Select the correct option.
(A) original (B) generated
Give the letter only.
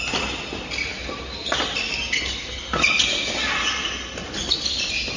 A